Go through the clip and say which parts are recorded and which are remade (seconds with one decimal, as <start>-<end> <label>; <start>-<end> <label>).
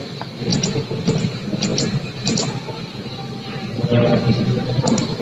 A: 0.0-0.5 recorded; 0.5-1.0 remade; 1.0-5.2 recorded